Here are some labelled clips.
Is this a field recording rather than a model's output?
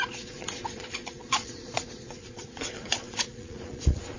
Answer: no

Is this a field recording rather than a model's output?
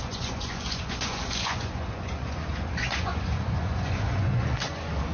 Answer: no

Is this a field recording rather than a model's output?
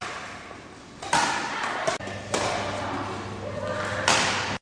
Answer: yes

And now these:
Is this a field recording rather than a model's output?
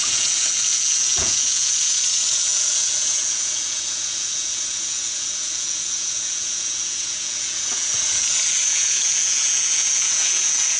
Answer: no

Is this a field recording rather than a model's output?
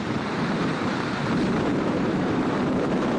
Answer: no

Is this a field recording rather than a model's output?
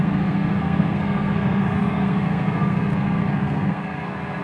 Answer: no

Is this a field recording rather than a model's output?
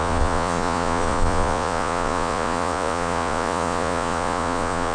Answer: no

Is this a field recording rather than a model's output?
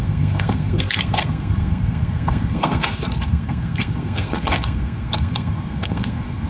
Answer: no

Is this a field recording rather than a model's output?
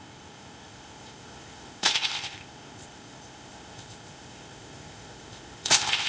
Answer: no